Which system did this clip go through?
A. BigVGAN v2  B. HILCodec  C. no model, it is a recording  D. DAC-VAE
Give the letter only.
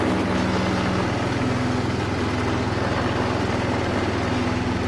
C